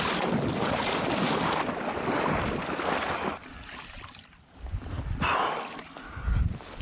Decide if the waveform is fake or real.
real